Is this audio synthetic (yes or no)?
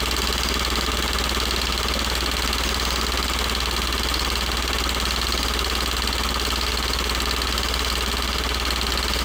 no